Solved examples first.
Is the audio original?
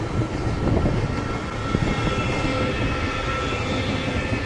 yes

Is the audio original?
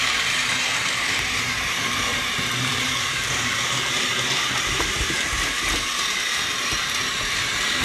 no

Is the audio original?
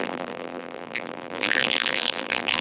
no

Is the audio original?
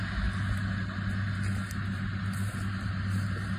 yes